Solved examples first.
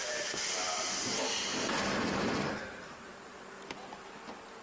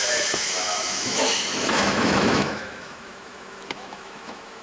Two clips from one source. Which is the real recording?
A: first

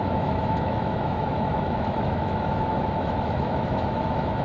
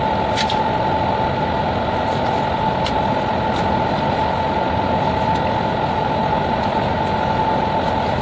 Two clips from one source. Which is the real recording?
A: second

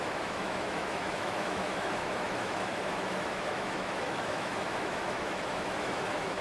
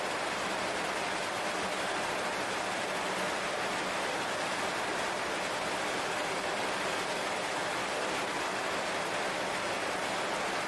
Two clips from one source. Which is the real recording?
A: second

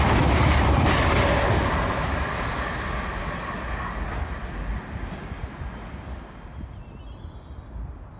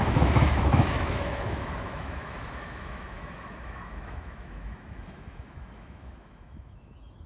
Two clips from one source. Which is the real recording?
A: first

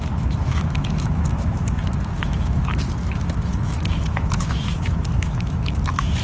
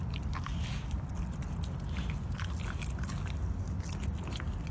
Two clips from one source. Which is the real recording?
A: second